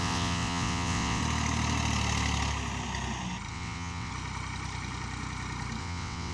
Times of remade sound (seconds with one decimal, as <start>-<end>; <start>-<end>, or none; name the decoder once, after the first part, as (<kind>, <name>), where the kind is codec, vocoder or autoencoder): 0.0-1.2 (vocoder, WaveNeXt); 3.5-4.1; 5.8-6.3